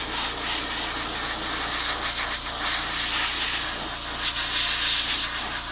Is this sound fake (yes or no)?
no